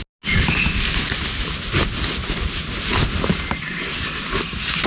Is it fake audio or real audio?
real